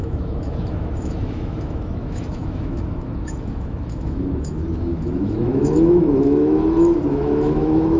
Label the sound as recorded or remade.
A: remade